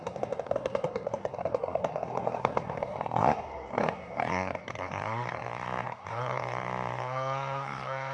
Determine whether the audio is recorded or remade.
remade